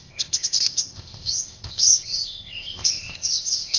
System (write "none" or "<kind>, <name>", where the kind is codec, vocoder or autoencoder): codec, ZipCodec